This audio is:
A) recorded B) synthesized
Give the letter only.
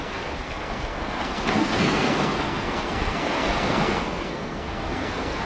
B